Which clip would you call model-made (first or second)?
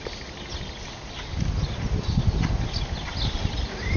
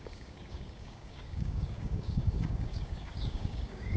second